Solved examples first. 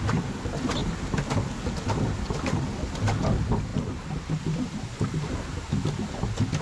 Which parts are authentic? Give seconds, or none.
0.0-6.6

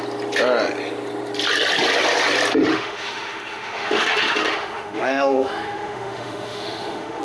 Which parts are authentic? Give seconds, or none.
0.0-2.7

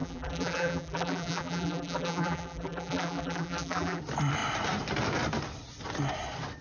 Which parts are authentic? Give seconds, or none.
4.0-6.6

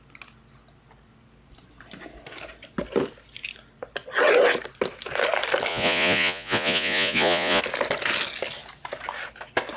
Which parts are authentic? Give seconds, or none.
0.0-5.7; 7.6-9.8